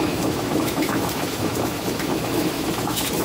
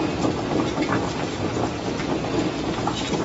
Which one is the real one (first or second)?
second